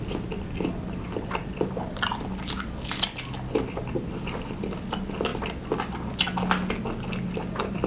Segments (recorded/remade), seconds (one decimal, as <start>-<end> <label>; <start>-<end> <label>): 0.0-7.9 recorded